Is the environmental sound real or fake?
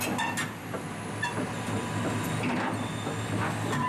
real